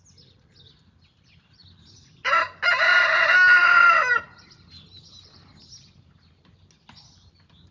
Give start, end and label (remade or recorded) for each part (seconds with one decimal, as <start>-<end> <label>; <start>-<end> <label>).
0.0-1.6 recorded; 1.6-2.3 remade; 2.3-3.6 recorded; 3.6-5.5 remade; 5.5-7.7 recorded